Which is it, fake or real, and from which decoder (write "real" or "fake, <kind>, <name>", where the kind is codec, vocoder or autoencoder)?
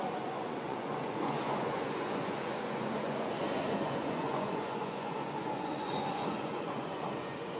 fake, vocoder, Vocos